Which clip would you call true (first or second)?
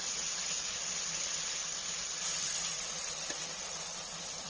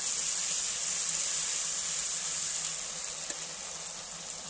second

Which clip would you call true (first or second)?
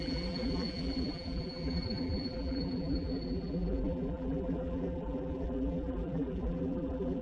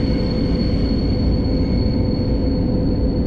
second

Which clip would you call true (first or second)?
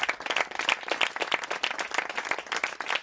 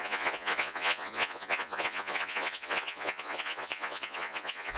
first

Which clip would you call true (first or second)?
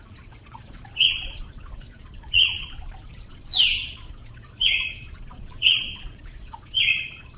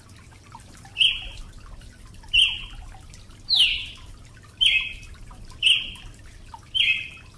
second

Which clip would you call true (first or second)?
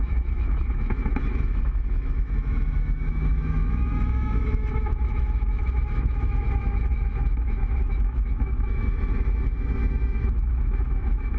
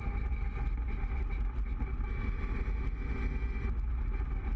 second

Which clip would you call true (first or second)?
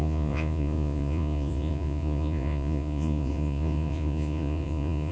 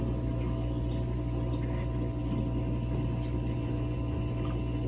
second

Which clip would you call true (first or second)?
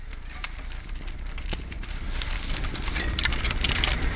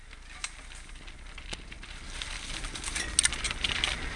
second